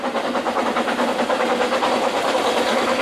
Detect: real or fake real